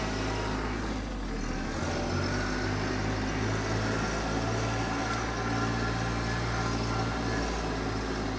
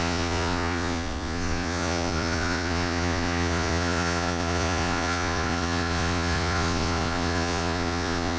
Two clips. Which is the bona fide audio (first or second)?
first